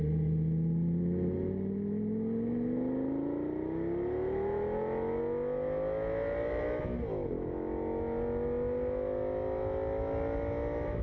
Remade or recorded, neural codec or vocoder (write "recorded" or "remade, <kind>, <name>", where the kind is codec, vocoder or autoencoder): recorded